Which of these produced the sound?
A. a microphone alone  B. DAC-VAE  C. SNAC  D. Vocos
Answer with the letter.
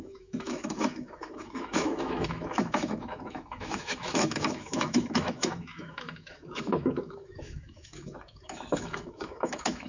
B